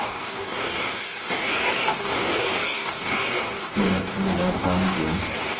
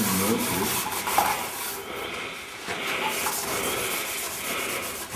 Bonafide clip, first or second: second